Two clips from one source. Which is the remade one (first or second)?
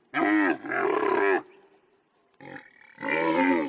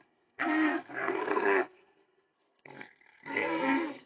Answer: second